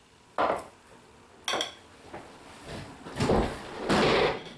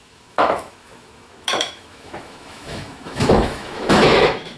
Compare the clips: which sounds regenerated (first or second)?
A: second